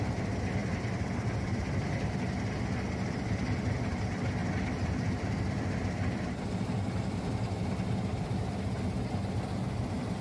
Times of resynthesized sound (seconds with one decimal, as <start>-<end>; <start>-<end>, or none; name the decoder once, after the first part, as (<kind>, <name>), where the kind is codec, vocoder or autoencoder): 0.6-1.6 (vocoder, BigVGAN v2); 4.4-8.8